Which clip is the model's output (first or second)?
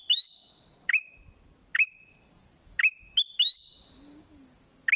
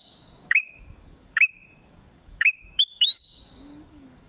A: second